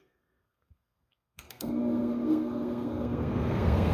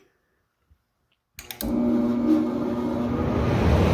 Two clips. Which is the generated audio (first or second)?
first